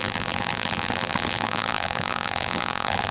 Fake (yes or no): yes